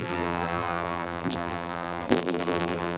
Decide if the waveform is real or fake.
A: fake